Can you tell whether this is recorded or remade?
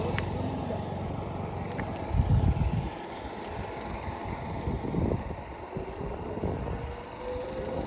recorded